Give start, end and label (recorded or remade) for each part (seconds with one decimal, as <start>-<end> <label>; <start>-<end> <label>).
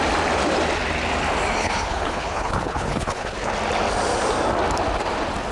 0.0-1.6 recorded; 1.6-3.5 remade; 3.5-5.5 recorded